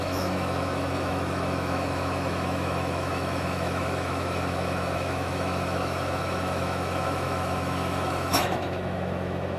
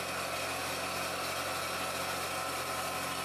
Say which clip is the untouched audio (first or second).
second